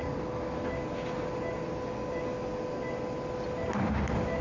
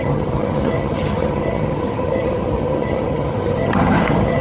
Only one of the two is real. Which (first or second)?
first